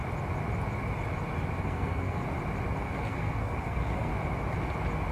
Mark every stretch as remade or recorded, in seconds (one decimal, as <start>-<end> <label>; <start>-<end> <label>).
0.0-1.6 recorded; 1.6-2.2 remade; 2.2-2.8 recorded; 2.8-4.1 remade; 4.1-5.1 recorded